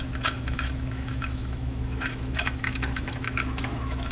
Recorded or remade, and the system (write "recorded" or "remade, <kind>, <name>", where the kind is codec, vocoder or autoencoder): remade, autoencoder, DAC-VAE